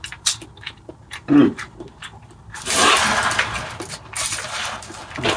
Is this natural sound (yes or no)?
yes